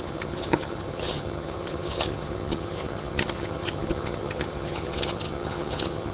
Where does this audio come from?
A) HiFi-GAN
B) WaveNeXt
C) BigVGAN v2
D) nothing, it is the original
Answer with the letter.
A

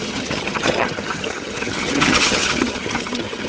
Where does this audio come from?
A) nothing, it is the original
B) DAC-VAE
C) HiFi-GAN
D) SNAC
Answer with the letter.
C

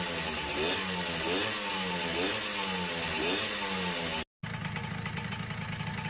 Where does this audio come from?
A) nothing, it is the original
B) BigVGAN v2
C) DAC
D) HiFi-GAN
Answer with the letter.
A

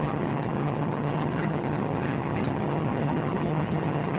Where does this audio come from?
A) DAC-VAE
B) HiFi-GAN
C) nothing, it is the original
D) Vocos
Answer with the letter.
B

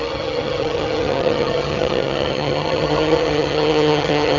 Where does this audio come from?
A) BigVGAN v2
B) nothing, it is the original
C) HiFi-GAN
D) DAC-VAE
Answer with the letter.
C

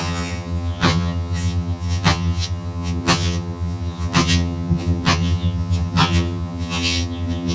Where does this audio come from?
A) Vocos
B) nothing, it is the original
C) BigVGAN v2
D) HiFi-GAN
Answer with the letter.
D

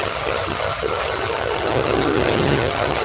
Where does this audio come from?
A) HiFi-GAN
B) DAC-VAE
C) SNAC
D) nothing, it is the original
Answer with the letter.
A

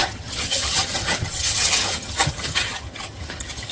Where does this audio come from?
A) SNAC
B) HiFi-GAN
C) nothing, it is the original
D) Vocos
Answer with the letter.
B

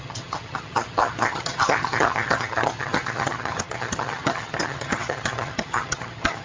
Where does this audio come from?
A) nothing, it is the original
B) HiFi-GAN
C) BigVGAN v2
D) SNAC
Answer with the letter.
B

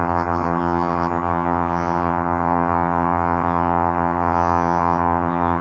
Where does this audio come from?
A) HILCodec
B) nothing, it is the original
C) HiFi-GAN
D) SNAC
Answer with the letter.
C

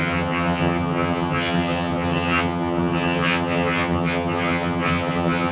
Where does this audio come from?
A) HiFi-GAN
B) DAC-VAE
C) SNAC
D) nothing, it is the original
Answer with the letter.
A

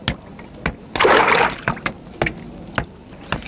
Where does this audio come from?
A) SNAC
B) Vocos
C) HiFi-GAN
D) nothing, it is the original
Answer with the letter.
D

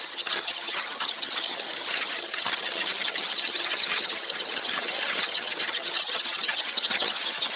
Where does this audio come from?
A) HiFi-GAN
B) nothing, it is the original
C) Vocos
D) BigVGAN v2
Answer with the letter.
A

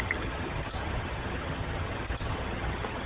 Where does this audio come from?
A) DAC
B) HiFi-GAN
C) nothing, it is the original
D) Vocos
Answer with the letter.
B